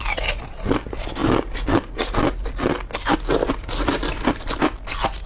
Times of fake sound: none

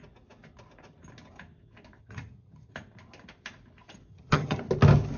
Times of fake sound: 2.0-2.7 (vocoder, HiFi-GAN); 4.1-4.6

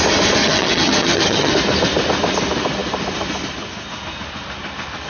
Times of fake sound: 0.4-1.5 (vocoder, HiFi-GAN)

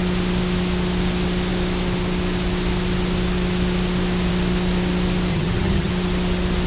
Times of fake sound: 5.3-5.9 (vocoder, HiFi-GAN)

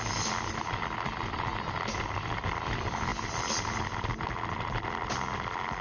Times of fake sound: none